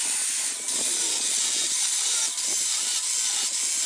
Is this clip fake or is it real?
real